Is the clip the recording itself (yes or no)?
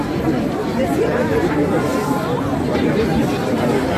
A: yes